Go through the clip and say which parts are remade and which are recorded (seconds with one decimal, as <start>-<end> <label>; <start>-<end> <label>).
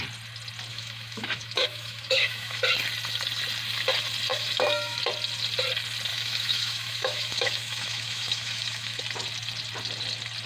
0.0-0.7 recorded; 0.7-2.6 remade; 2.6-4.3 recorded; 4.3-5.0 remade; 5.0-6.1 recorded; 6.1-9.0 remade; 9.0-10.5 recorded